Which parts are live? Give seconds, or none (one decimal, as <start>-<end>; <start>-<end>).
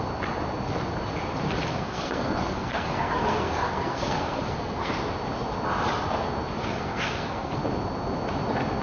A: 0.0-1.7; 4.9-6.6; 7.6-8.8